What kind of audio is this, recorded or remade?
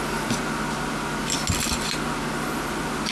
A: recorded